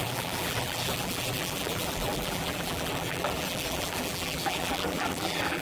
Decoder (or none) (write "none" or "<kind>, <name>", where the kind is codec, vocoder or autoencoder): vocoder, BigVGAN v2